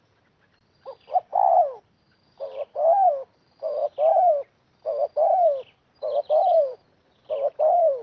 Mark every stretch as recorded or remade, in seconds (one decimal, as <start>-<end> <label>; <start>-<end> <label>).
0.0-3.8 remade; 3.8-6.2 recorded; 6.2-8.0 remade